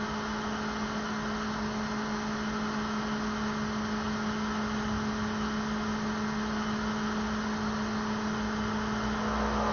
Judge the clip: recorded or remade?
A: recorded